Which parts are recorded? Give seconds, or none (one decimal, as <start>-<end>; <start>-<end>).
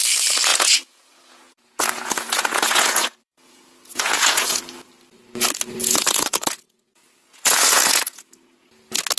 0.0-0.5; 4.6-5.8; 8.7-9.2